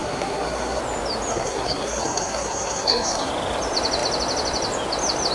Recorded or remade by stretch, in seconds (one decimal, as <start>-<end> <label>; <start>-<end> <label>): 0.0-0.8 remade; 0.8-1.3 recorded; 1.3-3.3 remade; 3.3-5.3 recorded